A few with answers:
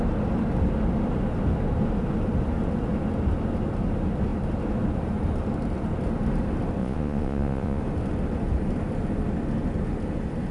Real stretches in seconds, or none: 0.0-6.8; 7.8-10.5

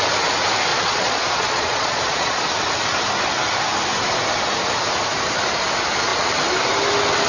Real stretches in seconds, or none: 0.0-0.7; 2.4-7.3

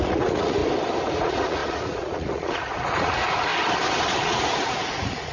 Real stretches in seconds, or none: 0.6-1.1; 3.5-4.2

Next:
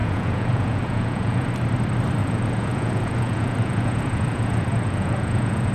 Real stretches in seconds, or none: 1.5-2.2

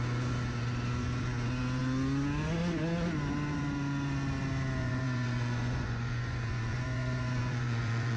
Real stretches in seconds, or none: 0.0-4.8

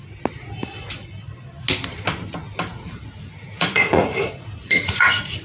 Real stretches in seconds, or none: 0.0-2.7